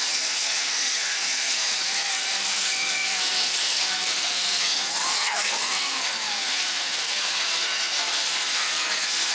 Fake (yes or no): yes